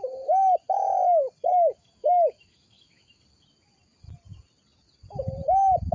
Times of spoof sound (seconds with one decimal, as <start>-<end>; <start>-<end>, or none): 1.5-3.2